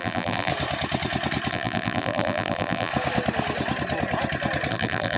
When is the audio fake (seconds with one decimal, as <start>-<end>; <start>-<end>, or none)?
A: 0.0-0.5; 1.5-2.9; 4.7-5.2